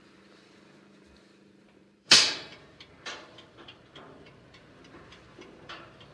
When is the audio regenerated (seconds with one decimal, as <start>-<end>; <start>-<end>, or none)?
0.0-6.1